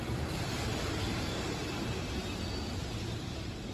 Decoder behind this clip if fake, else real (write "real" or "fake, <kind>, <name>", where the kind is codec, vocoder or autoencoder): real